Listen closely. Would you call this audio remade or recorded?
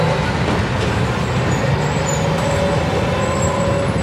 recorded